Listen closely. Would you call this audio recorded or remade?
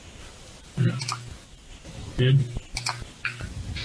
recorded